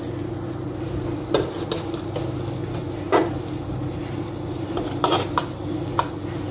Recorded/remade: recorded